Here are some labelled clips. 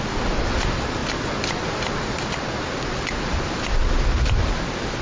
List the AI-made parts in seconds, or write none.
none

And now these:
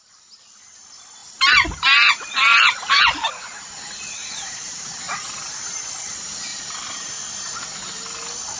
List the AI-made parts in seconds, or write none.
2.5-3.3 (vocoder, BigVGAN v2); 4.2-5.8; 6.5-7.2

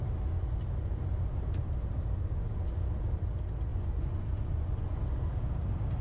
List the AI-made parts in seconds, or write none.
3.7-5.0 (vocoder, Vocos)

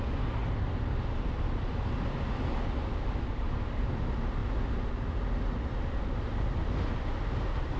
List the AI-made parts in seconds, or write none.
none

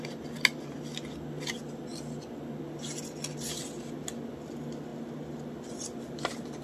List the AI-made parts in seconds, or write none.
none

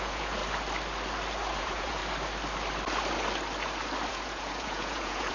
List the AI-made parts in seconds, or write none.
0.0-0.4 (vocoder, Vocos); 1.6-2.0; 4.1-5.3

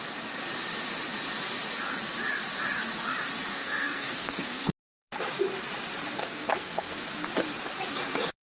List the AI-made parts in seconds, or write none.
3.5-4.7 (codec, SNAC); 6.2-7.0

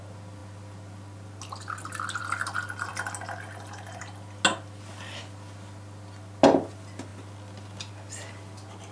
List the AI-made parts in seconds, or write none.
none